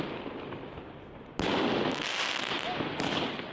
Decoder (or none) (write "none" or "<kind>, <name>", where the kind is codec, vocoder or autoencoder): none